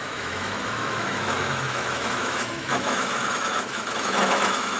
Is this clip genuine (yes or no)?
no